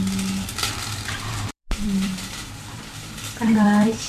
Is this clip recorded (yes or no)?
no